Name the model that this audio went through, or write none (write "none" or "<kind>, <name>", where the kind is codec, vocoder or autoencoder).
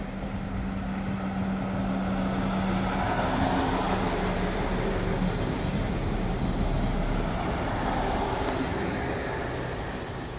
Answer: none